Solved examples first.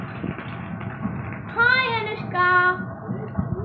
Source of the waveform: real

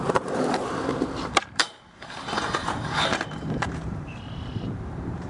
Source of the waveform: fake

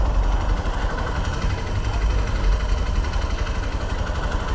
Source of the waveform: real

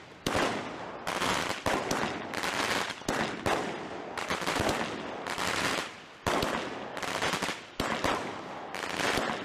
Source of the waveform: real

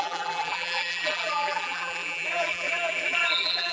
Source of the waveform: fake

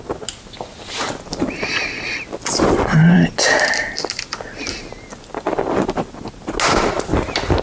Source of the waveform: real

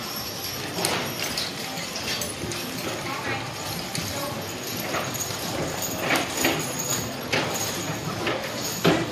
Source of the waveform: fake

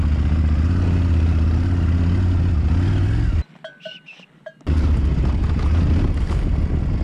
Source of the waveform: real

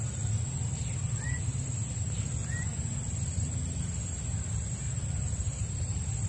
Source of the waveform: real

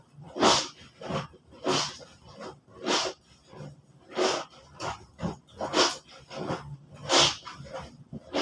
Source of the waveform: real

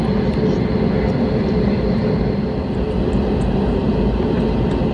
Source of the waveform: real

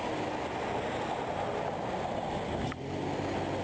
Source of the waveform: real